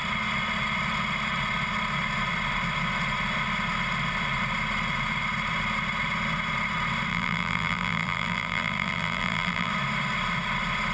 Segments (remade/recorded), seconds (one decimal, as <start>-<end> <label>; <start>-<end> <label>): 0.0-7.1 recorded; 7.1-9.7 remade; 9.7-10.9 recorded